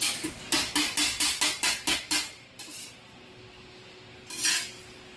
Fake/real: real